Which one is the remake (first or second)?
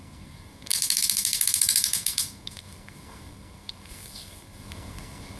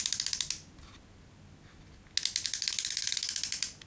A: first